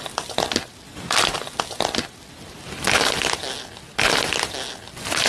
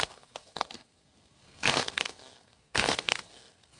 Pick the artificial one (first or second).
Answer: second